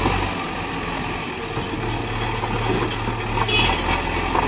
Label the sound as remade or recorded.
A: recorded